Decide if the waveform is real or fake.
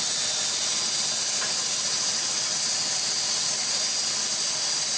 real